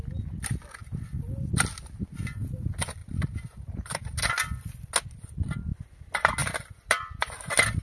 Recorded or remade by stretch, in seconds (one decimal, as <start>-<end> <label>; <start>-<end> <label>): 0.0-3.0 recorded; 3.0-4.3 remade; 4.3-6.4 recorded; 6.4-7.3 remade; 7.3-7.8 recorded